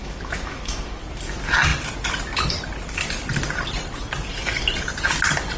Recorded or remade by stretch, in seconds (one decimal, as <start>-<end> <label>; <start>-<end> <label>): 0.0-1.0 remade; 1.0-5.6 recorded